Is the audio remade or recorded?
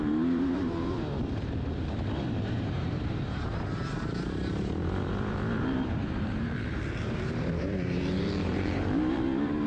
remade